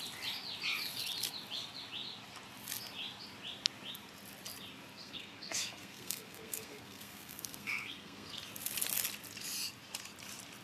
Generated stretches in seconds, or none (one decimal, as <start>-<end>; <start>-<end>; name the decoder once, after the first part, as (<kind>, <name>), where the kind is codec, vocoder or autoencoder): 4.9-8.4 (codec, SNAC)